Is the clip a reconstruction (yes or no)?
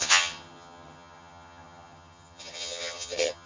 yes